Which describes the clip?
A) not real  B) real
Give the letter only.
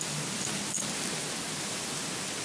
B